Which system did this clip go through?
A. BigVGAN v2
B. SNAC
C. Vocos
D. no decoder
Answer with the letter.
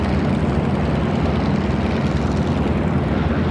D